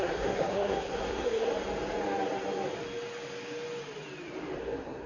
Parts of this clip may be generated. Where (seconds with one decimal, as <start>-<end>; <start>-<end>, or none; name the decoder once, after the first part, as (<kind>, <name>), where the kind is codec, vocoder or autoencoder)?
0.0-1.5 (codec, SNAC); 4.6-5.1